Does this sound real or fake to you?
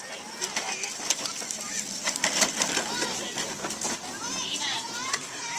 real